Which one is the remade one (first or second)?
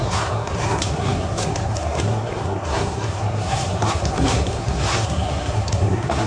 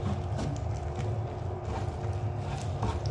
first